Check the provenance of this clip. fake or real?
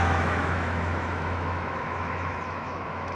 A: fake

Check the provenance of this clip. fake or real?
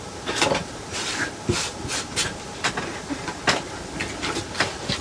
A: real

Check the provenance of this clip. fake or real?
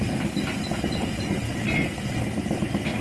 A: real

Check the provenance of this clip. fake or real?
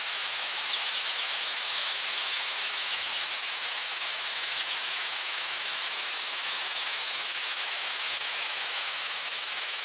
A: fake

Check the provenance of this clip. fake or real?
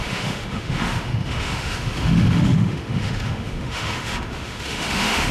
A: fake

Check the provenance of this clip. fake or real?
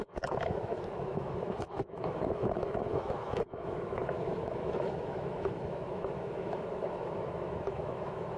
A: fake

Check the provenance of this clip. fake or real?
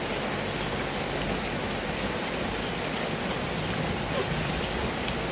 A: real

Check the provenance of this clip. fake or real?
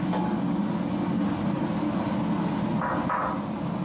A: real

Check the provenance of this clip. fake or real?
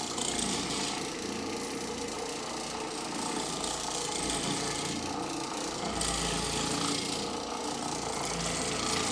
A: real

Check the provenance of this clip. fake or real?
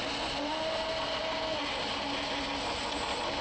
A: real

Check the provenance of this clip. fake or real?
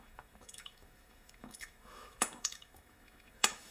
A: fake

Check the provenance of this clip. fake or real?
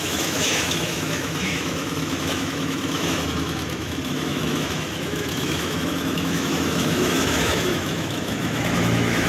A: fake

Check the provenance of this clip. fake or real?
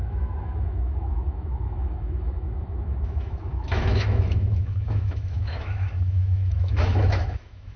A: fake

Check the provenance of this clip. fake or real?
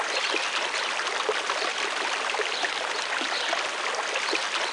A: real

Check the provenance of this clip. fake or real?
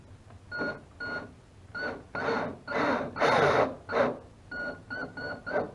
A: real